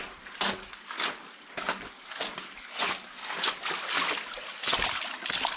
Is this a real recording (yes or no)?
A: yes